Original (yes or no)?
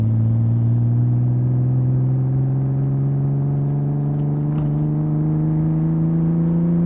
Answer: yes